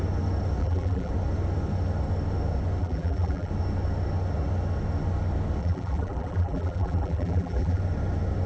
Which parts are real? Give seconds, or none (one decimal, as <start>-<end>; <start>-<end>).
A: 0.0-0.6; 1.1-2.8; 3.5-5.6; 7.8-8.5